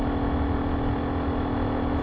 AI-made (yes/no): no